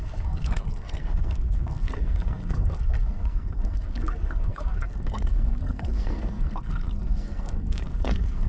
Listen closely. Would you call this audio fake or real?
fake